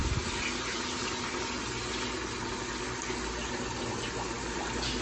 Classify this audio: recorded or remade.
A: recorded